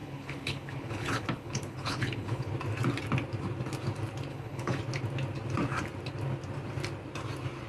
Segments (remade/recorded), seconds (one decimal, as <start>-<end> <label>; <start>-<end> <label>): 0.0-2.5 remade; 2.5-4.3 recorded; 4.3-4.8 remade; 4.8-7.7 recorded